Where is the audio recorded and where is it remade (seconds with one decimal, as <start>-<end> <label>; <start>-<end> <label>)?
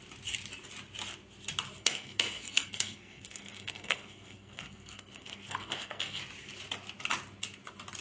0.0-1.8 recorded; 1.8-6.2 remade; 6.2-8.0 recorded